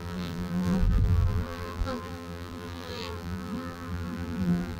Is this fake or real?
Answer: fake